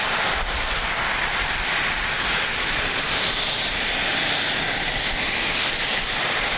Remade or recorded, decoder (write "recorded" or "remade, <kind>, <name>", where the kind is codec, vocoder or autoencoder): recorded